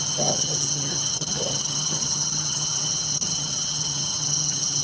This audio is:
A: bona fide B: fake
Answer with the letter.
B